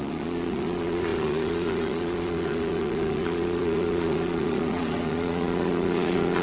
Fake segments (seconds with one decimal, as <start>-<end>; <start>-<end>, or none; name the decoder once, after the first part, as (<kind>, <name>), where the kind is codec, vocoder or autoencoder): 0.0-6.4 (vocoder, Vocos)